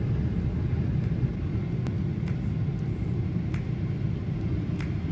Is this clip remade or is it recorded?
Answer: recorded